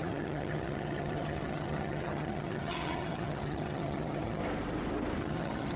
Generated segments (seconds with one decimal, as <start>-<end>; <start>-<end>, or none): 0.0-4.4; 5.2-5.8